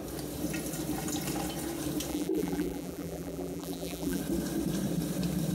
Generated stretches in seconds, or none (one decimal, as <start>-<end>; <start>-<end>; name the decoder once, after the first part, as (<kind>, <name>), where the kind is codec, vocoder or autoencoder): 2.1-4.2 (vocoder, BigVGAN v2)